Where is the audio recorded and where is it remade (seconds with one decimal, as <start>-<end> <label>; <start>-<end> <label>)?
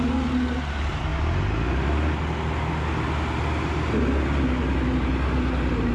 0.0-5.9 recorded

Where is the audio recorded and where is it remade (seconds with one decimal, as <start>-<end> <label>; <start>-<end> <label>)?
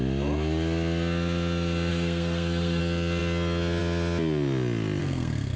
0.0-1.9 recorded; 1.9-2.8 remade; 2.8-5.0 recorded; 5.0-5.6 remade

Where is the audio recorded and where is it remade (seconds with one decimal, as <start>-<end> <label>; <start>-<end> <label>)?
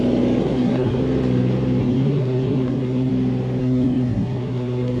0.0-0.4 recorded; 0.4-1.0 remade; 1.0-1.8 recorded; 1.8-3.1 remade; 3.1-3.6 recorded; 3.6-5.0 remade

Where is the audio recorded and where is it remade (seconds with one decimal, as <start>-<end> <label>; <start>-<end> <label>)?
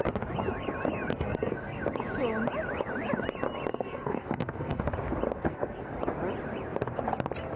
0.0-1.1 recorded; 1.1-1.8 remade; 1.8-3.7 recorded; 3.7-4.8 remade; 4.8-5.4 recorded; 5.4-5.9 remade; 5.9-7.6 recorded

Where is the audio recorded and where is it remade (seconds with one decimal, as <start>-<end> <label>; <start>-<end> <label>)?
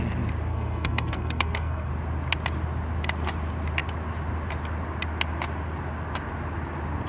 0.0-0.5 recorded; 0.5-1.9 remade; 1.9-7.1 recorded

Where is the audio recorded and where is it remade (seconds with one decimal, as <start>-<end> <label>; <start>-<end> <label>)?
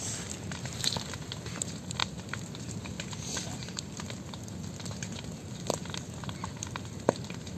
0.0-7.6 recorded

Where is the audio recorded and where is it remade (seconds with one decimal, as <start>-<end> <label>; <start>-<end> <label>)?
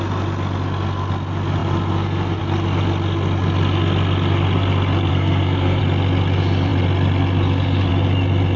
0.0-5.1 recorded; 5.1-5.8 remade; 5.8-8.6 recorded